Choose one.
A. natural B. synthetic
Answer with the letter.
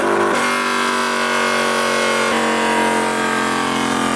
A